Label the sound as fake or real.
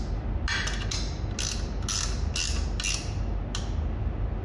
real